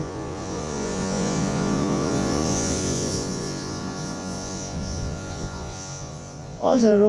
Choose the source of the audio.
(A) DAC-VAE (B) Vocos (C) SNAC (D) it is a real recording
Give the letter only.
B